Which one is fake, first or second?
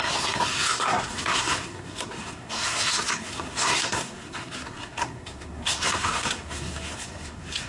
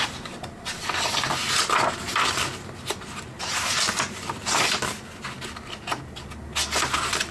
first